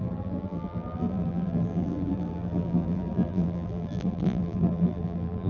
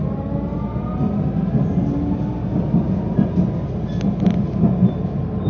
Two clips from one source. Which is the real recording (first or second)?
second